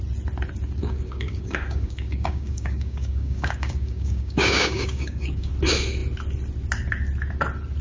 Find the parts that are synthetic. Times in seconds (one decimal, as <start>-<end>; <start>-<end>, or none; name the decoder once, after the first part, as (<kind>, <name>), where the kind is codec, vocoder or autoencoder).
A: 0.8-5.5 (codec, DAC)